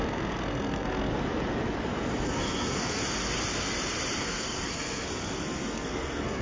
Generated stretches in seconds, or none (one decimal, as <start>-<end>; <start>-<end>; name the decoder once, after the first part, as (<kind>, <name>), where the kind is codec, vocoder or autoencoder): 0.0-1.1 (codec, SNAC); 2.2-3.0; 4.2-6.4